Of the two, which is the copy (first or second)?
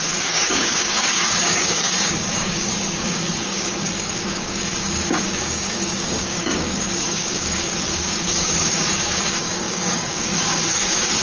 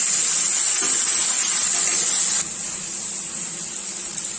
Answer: first